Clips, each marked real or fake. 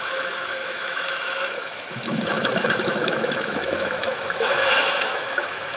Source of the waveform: fake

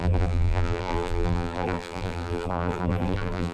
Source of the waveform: fake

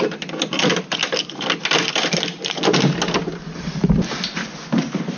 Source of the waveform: real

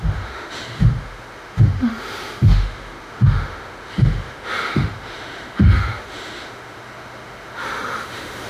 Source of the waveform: fake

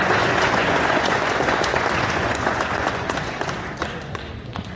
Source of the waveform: fake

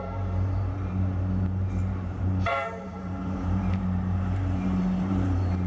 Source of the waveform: fake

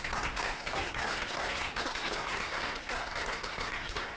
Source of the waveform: fake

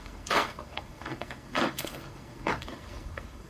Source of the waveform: fake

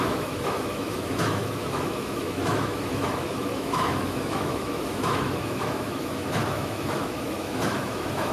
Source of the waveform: fake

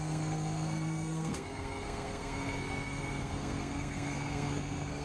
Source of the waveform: fake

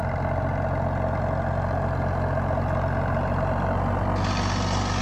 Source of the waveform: real